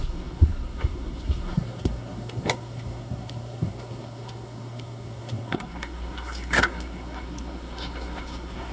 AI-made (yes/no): yes